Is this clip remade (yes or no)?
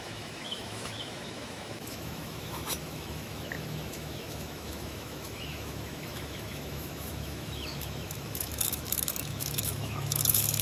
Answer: yes